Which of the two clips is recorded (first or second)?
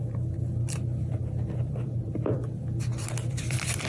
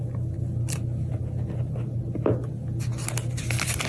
second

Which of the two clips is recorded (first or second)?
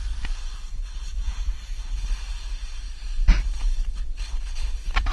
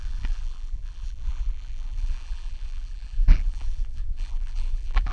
first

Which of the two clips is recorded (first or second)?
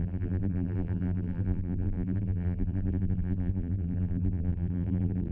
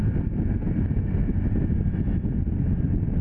second